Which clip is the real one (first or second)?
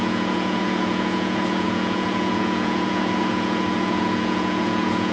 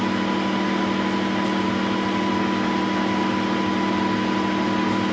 second